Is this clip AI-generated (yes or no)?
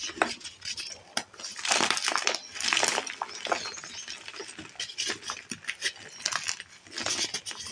no